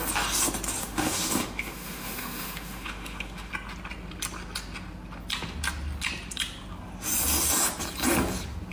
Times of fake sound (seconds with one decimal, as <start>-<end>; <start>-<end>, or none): 0.8-3.5